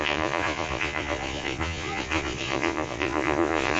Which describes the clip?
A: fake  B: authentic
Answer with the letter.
A